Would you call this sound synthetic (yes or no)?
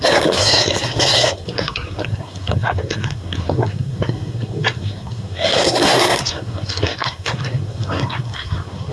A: yes